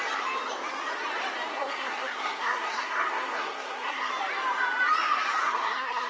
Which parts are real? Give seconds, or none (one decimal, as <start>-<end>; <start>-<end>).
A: 0.0-1.5; 4.1-5.4